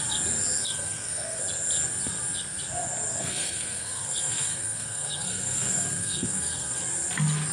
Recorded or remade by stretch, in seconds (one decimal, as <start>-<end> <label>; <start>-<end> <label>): 0.0-0.6 recorded; 0.6-1.4 remade; 1.4-3.1 recorded; 3.1-6.8 remade; 6.8-7.5 recorded